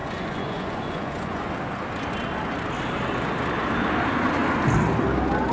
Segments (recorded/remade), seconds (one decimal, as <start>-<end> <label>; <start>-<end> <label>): 0.0-1.5 remade; 1.5-5.5 recorded